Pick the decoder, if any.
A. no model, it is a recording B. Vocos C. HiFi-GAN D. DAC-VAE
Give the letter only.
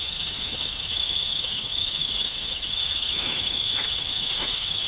D